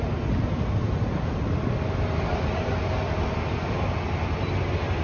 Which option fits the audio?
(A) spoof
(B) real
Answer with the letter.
B